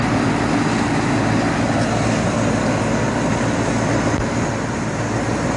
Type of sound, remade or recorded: recorded